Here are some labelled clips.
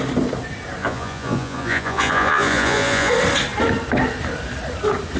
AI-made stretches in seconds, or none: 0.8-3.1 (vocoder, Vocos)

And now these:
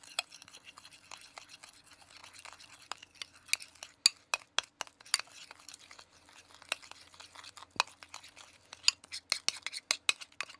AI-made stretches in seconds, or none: none

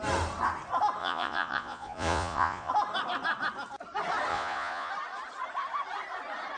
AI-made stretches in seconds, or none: 1.0-2.7 (vocoder, Vocos); 4.3-4.9

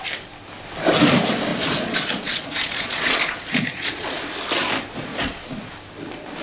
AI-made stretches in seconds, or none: 1.5-4.2 (vocoder, Vocos); 5.1-5.7